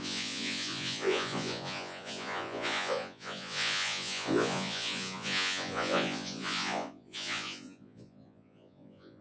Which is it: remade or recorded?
remade